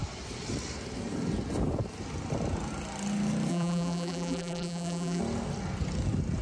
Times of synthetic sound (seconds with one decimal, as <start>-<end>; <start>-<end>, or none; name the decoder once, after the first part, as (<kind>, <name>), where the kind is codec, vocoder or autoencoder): 3.5-5.2 (vocoder, BigVGAN v2)